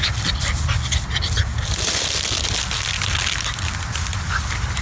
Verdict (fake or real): real